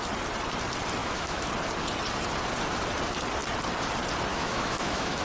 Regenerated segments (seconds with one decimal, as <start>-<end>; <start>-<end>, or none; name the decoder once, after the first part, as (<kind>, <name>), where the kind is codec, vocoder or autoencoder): 1.0-1.5 (autoencoder, DAC-VAE); 4.3-5.2